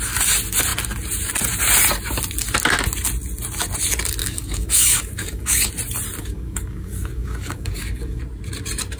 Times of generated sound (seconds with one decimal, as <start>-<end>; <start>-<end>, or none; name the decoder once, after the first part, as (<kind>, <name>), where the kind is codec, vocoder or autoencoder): 4.2-5.7 (codec, DAC); 6.2-8.2